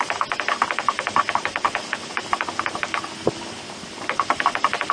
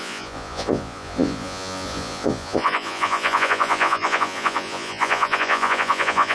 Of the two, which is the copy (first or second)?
second